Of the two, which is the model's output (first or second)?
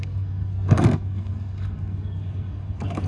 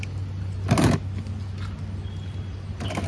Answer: first